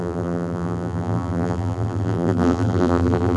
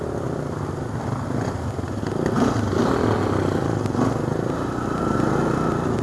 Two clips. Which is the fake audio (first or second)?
first